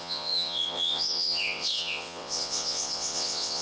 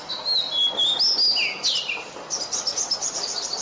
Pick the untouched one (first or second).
second